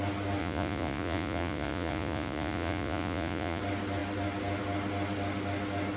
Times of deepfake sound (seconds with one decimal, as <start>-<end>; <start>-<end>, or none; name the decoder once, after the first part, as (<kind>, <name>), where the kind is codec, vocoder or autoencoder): 0.4-3.6 (vocoder, Vocos)